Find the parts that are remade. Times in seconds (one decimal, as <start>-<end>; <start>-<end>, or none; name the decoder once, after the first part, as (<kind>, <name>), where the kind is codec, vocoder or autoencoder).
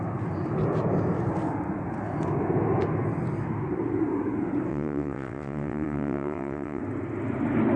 4.7-6.8 (vocoder, WaveNeXt)